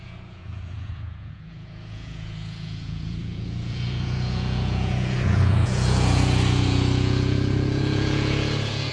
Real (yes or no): no